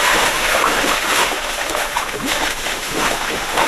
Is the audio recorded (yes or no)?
no